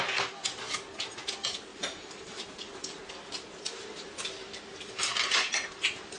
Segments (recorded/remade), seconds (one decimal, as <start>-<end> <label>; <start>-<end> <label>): 0.0-1.7 recorded; 1.7-2.4 remade; 2.4-6.2 recorded